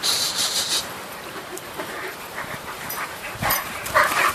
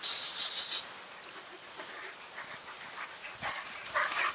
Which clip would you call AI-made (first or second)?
first